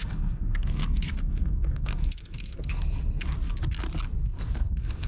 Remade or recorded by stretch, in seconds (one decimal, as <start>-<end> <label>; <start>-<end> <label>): 0.0-2.8 remade; 2.8-4.3 recorded; 4.3-5.1 remade